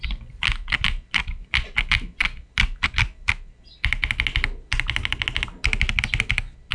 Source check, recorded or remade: recorded